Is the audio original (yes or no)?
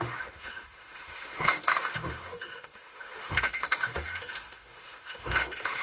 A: no